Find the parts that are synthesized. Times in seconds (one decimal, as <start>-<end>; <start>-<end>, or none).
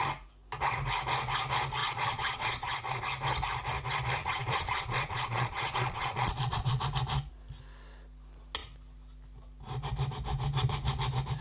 1.8-3.0; 4.2-6.8